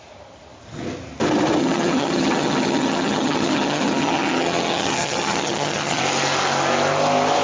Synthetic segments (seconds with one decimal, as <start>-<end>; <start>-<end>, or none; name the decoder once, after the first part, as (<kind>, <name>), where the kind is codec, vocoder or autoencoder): 1.6-6.0 (vocoder, HiFi-GAN)